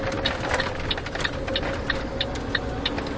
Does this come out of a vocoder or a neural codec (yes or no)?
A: no